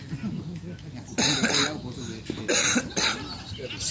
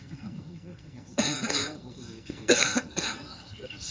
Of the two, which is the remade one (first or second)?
second